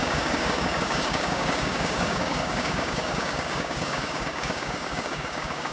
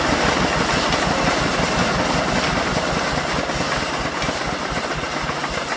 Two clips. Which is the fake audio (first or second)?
first